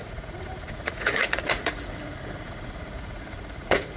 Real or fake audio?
fake